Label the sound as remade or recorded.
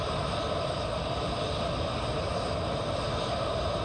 recorded